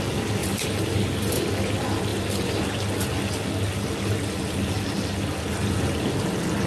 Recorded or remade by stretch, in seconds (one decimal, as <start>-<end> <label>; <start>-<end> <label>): 0.0-0.4 recorded; 0.4-1.4 remade; 1.4-6.7 recorded

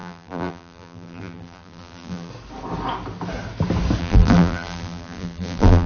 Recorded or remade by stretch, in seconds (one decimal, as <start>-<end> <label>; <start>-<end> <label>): 0.0-2.3 remade; 2.3-4.0 recorded; 4.0-5.9 remade

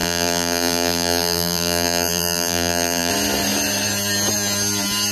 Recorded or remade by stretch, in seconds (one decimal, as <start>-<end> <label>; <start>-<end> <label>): 0.0-3.1 remade; 3.1-5.1 recorded